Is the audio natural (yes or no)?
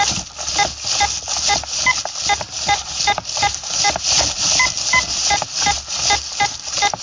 yes